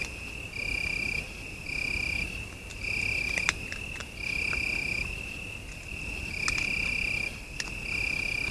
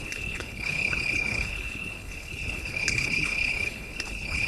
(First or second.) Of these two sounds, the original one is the first